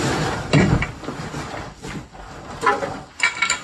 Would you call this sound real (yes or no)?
yes